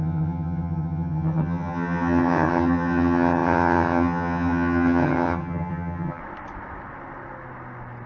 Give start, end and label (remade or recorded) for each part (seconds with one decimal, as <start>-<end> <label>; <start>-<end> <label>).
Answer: 0.0-6.2 remade; 6.2-8.1 recorded